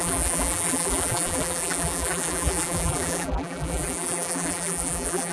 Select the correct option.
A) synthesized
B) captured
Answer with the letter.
A